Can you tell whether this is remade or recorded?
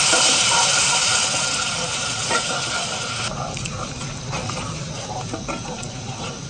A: recorded